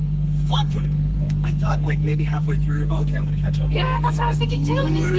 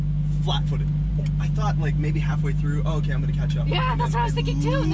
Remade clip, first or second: first